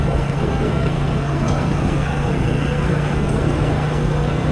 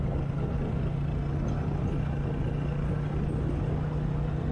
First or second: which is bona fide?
second